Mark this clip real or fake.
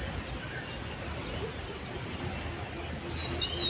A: real